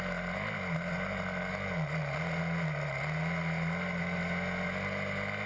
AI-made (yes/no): no